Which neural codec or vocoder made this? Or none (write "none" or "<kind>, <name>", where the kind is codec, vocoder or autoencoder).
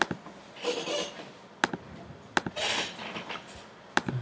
none